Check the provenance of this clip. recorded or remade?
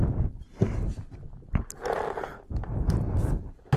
recorded